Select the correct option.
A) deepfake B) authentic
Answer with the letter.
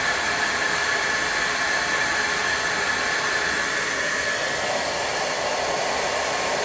B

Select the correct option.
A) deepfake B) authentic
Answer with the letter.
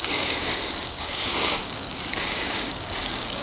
A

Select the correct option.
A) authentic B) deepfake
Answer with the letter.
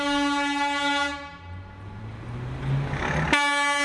A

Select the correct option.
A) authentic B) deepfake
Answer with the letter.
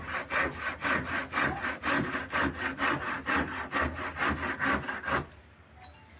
A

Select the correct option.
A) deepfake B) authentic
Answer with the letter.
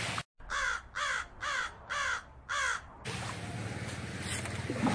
B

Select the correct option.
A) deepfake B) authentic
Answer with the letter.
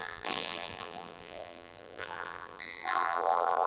A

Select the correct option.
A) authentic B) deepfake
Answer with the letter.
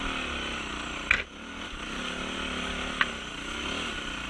A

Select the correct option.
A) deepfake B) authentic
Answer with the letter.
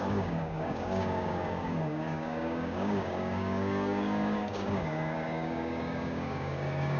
A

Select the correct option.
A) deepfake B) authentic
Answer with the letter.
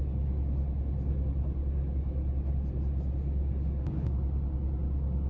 B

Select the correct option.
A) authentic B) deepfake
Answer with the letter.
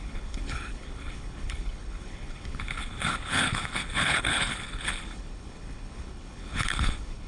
B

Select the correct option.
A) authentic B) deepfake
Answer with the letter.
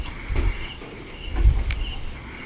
A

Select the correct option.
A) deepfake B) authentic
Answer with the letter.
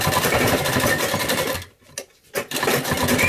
B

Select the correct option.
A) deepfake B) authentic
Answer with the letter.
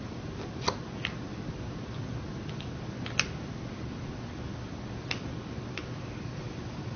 B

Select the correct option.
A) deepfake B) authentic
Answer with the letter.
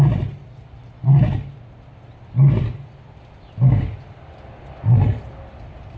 B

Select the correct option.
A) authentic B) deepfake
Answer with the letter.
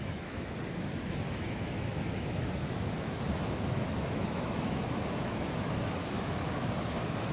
B